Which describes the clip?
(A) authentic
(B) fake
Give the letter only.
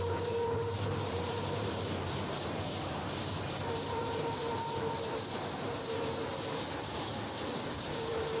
B